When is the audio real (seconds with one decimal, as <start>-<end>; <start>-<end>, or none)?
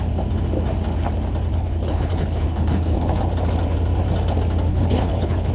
0.0-1.5; 3.2-4.7